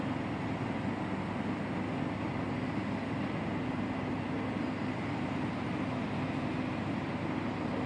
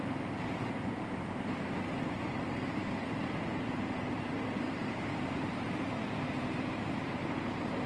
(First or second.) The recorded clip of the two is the first